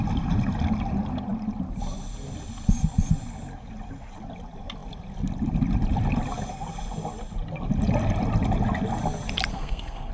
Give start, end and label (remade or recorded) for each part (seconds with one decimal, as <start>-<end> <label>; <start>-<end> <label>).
0.0-9.5 recorded; 9.5-10.1 remade